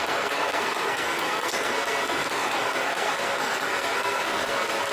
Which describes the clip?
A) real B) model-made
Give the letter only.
B